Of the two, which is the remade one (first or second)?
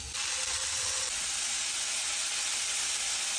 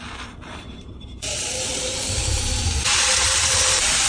second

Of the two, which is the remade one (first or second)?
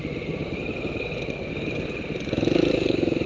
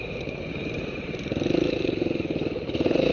second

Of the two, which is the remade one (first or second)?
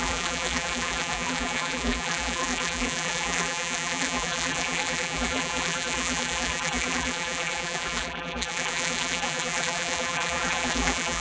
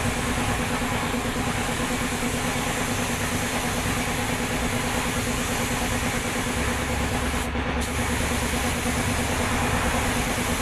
first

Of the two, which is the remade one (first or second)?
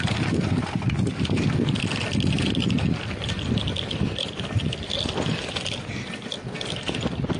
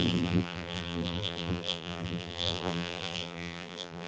second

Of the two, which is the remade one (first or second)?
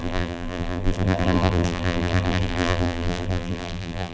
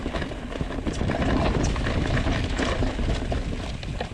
first